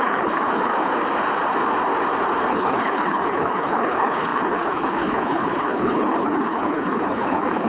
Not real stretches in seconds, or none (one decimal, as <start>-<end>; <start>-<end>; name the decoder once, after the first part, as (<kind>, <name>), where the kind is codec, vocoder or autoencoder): 0.0-0.7 (codec, HILCodec); 2.5-7.7